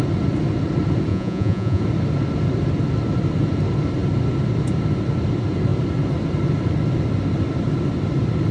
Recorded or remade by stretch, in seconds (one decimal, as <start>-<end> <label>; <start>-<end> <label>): 0.0-1.1 recorded; 1.1-1.8 remade; 1.8-8.5 recorded